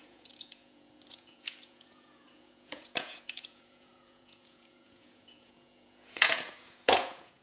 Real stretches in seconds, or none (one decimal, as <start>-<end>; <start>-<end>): none